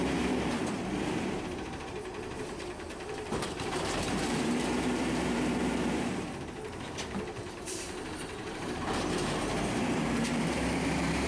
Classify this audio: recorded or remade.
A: remade